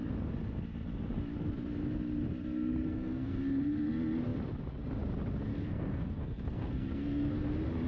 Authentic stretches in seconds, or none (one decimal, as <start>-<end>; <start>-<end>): 0.0-2.8; 3.4-5.5; 7.4-7.9